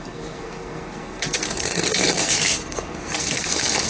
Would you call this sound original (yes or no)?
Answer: no